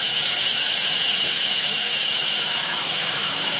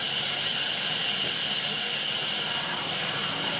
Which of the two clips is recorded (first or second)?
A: second